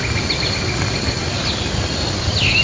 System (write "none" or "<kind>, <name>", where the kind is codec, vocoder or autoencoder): none